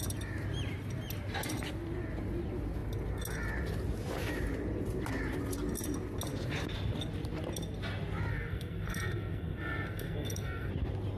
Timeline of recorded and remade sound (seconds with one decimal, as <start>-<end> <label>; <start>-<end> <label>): 0.0-8.3 recorded; 8.3-10.7 remade; 10.7-11.2 recorded